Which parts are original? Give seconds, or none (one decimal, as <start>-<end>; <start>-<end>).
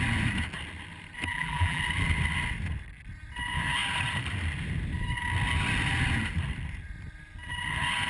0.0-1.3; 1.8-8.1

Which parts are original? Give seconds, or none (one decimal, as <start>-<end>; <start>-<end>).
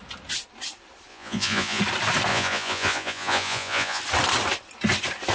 0.0-1.1; 1.8-2.3; 4.0-5.3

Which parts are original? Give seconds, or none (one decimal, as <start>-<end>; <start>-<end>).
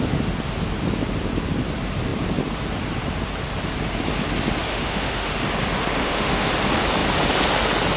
0.0-4.7; 5.3-6.0; 6.5-8.0